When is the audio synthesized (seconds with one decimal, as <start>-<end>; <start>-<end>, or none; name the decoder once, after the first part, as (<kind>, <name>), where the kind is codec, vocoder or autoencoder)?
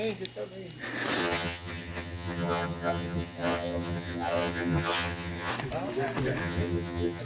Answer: 1.2-5.5 (vocoder, HiFi-GAN); 6.4-7.2